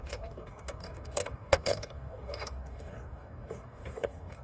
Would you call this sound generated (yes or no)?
yes